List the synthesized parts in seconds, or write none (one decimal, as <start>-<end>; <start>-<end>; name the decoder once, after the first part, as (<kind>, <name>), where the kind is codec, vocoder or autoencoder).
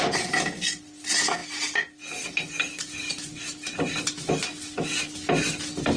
none